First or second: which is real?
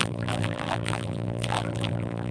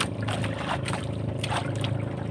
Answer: second